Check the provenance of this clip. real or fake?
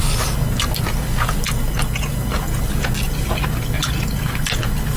real